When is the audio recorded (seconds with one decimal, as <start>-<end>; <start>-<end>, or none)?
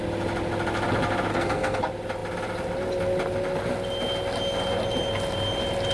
0.0-1.3; 1.8-5.9